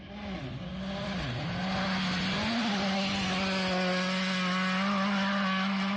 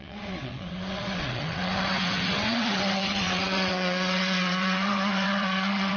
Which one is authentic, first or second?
first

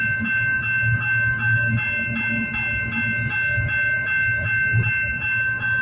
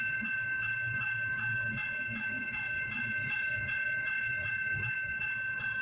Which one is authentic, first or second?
first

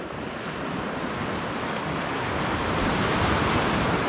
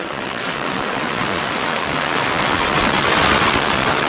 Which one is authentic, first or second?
first